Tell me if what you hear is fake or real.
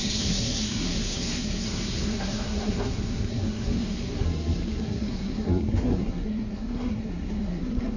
fake